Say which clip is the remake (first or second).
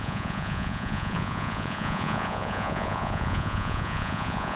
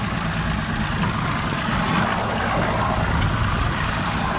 first